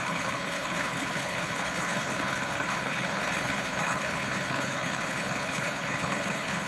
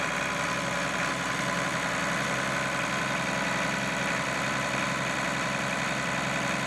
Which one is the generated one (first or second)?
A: first